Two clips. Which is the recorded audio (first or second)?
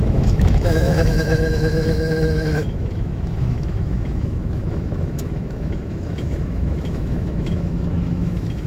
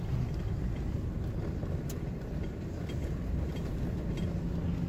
second